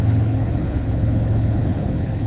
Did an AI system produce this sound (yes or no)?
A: yes